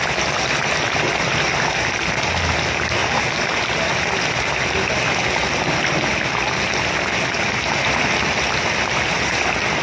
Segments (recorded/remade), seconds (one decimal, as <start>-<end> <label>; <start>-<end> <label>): 0.0-9.8 recorded